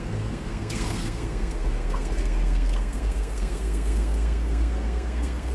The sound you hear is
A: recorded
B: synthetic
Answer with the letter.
B